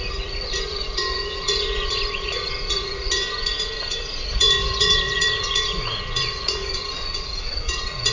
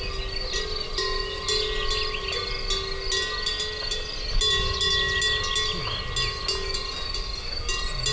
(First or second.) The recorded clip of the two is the second